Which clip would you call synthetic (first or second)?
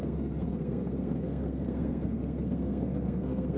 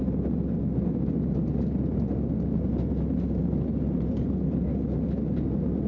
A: first